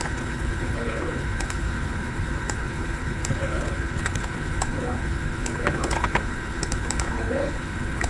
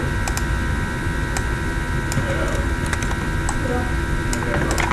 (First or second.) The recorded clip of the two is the second